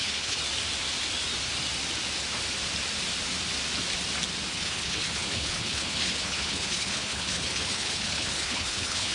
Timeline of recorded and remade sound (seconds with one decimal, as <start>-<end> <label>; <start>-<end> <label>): 0.0-0.4 remade; 0.4-4.5 recorded; 4.5-9.1 remade